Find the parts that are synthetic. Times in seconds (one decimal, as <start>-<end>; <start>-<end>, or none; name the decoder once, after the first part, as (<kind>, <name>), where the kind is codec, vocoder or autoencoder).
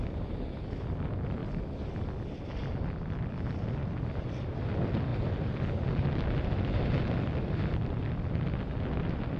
none